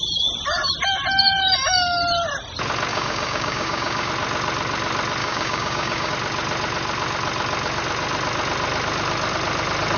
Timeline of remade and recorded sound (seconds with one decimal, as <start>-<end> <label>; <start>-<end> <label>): 0.0-2.9 recorded; 2.9-4.1 remade; 4.1-5.2 recorded; 5.2-6.1 remade; 6.1-10.0 recorded